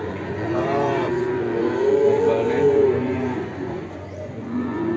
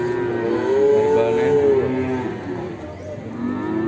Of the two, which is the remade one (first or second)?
first